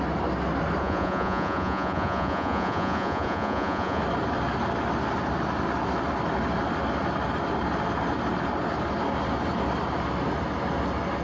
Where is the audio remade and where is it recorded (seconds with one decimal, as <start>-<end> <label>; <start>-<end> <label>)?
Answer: 0.0-0.8 recorded; 0.8-4.0 remade; 4.0-11.2 recorded

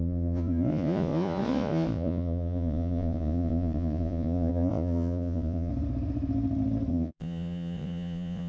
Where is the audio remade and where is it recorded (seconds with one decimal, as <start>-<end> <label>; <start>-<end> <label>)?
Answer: 0.0-5.7 remade; 5.7-6.9 recorded; 6.9-8.5 remade